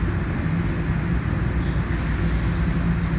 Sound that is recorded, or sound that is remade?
recorded